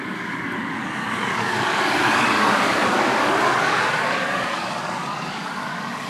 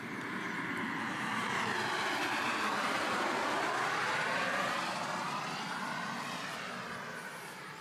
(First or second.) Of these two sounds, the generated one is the first